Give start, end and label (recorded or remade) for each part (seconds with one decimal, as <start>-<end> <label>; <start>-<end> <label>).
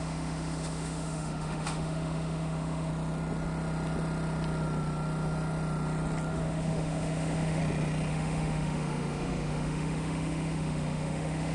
0.0-2.9 remade; 2.9-6.3 recorded; 6.3-7.6 remade; 7.6-8.1 recorded; 8.1-11.5 remade